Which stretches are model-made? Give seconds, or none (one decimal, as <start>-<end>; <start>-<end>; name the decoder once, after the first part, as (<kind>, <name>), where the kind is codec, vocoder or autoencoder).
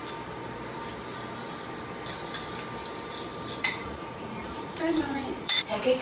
3.6-6.0 (vocoder, Vocos)